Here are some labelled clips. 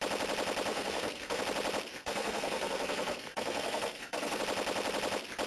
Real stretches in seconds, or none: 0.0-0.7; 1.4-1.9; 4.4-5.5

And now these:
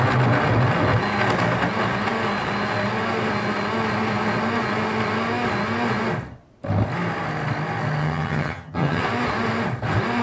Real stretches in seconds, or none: 0.0-8.0; 9.0-10.2

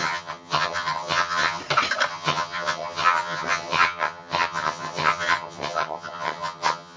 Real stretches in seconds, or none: 1.6-2.1